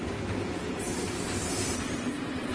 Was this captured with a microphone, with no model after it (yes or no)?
yes